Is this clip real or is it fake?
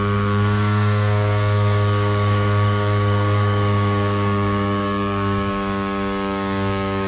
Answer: fake